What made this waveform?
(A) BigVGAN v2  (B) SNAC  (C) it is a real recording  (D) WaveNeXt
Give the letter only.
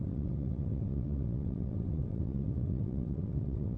D